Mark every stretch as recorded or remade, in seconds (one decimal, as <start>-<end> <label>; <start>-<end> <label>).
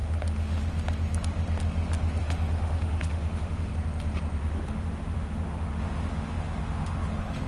0.0-0.7 remade; 0.7-2.2 recorded; 2.2-3.7 remade; 3.7-4.4 recorded; 4.4-7.5 remade